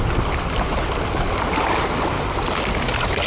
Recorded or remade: recorded